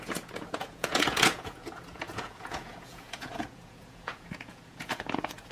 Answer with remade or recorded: remade